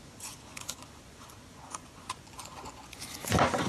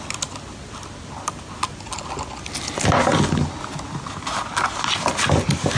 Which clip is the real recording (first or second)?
second